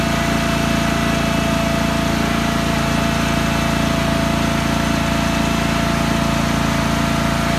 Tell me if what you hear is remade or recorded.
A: recorded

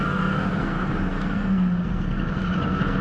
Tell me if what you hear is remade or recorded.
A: remade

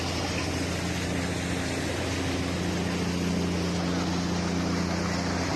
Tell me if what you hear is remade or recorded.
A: recorded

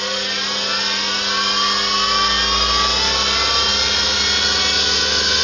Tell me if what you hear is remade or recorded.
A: recorded